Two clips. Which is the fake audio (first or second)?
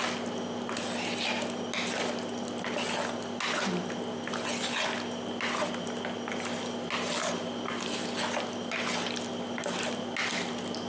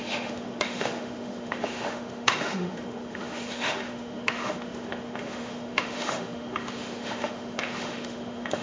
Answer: second